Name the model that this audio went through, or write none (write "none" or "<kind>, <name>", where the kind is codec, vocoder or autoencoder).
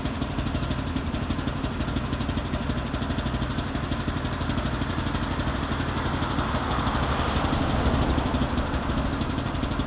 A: none